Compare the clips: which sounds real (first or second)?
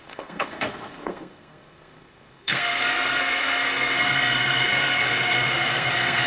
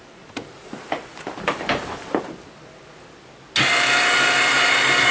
second